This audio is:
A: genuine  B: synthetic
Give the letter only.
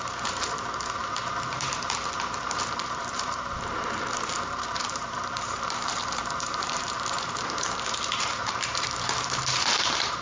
B